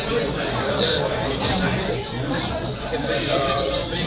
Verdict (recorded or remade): remade